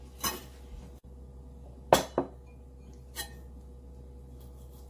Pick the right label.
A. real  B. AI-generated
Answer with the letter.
A